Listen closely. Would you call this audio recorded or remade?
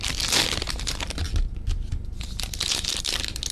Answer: recorded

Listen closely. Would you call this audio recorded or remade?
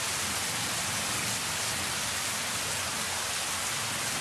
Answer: recorded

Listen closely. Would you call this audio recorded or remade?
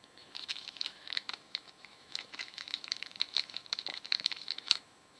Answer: remade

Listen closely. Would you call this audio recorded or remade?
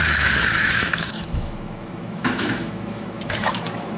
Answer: remade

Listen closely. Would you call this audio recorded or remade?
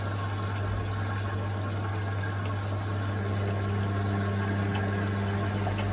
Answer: recorded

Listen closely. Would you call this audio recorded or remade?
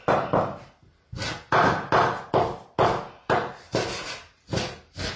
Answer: recorded